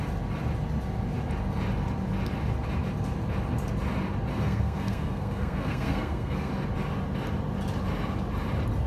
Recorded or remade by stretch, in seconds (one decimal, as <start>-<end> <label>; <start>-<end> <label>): 0.0-4.3 recorded; 4.3-6.5 remade; 6.5-8.9 recorded